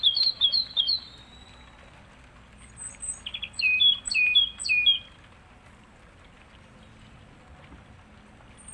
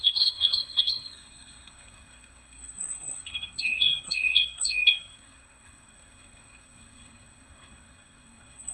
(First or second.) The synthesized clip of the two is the second